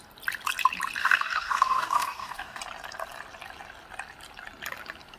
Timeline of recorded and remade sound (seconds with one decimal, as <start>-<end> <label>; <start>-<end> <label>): 0.0-1.0 recorded; 1.0-2.6 remade; 2.6-5.2 recorded